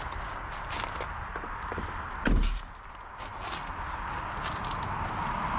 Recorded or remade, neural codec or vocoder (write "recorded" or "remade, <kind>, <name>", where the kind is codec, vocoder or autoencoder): recorded